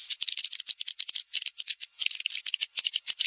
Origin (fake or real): real